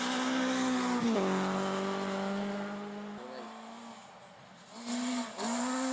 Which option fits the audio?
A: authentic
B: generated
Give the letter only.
A